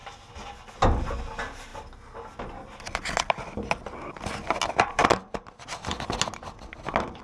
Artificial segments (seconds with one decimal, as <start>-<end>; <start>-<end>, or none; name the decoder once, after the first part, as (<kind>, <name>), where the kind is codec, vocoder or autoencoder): none